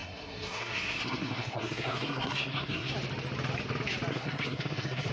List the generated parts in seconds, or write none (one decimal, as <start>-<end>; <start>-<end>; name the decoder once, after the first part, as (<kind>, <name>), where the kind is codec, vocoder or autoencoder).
0.0-2.9 (codec, SNAC); 4.1-5.1